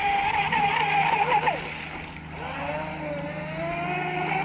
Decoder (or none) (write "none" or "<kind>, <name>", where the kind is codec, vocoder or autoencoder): none